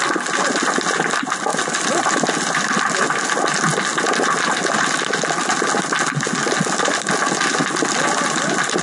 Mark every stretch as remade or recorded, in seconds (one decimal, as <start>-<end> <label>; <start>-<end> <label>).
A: 0.0-1.5 recorded; 1.5-2.8 remade; 2.8-8.8 recorded